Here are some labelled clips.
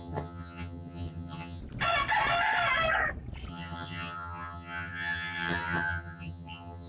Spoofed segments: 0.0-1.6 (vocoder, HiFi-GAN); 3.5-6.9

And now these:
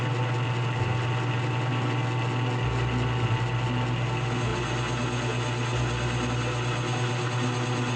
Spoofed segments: none

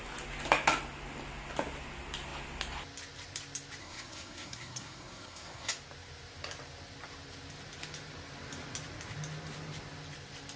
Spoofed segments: 3.8-5.7 (codec, SNAC)

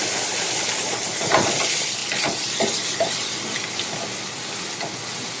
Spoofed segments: none

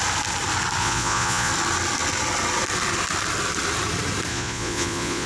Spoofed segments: 0.8-1.5 (vocoder, Vocos); 4.3-5.3

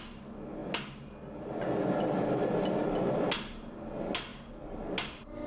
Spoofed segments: none

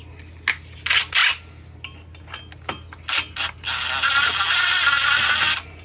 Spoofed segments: none